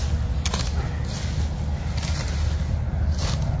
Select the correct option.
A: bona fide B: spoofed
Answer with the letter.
A